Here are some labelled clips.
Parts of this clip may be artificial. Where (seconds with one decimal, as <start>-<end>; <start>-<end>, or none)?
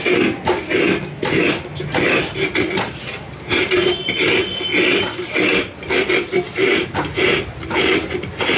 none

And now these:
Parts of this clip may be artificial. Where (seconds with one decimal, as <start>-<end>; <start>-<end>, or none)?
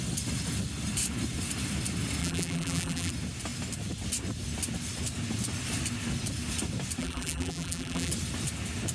2.2-3.1; 7.0-8.1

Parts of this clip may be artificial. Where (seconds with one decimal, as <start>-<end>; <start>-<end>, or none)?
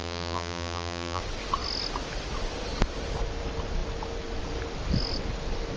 0.0-1.2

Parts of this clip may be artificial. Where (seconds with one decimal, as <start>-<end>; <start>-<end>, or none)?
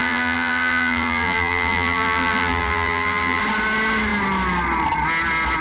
0.0-3.4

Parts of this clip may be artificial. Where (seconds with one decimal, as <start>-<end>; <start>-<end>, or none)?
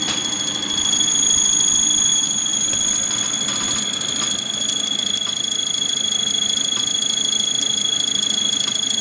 2.1-2.7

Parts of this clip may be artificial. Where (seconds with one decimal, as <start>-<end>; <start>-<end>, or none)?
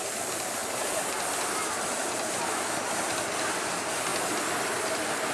0.0-0.6; 1.3-4.1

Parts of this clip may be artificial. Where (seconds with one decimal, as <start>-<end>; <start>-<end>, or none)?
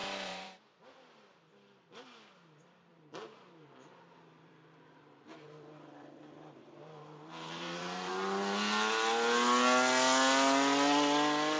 0.0-0.6; 2.9-8.1